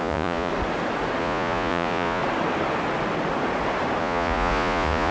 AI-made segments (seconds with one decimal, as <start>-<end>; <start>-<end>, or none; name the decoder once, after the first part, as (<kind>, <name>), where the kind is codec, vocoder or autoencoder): 0.0-0.5 (vocoder, Vocos); 1.2-2.2; 4.0-5.1

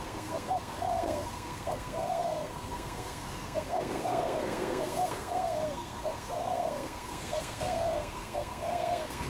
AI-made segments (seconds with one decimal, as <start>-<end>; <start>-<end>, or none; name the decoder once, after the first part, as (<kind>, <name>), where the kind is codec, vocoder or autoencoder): 0.0-9.3 (codec, SNAC)

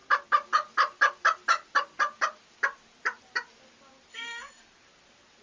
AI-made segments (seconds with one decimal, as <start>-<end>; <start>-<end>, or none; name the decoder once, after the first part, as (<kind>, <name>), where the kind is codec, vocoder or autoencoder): 4.1-4.6 (codec, DAC)